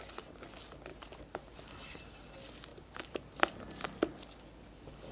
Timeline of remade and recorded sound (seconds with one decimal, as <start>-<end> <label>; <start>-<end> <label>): 0.0-0.9 recorded; 0.9-1.6 remade; 1.6-2.7 recorded; 2.7-3.5 remade; 3.5-5.1 recorded